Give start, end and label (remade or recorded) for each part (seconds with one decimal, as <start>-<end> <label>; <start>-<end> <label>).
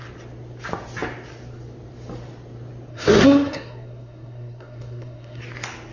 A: 0.0-2.9 recorded; 2.9-5.4 remade; 5.4-5.9 recorded